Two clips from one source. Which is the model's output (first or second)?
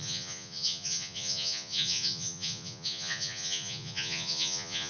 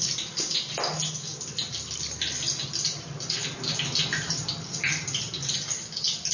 first